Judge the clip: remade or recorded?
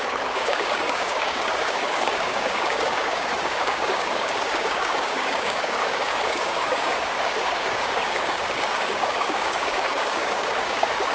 remade